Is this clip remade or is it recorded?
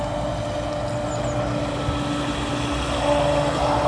recorded